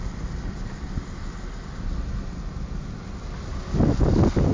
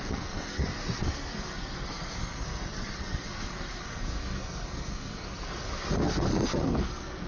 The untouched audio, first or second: first